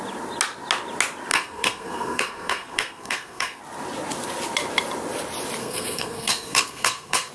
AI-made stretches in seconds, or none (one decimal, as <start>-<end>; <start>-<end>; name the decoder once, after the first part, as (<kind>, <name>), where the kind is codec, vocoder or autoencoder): 1.3-3.6 (codec, SNAC); 5.6-7.3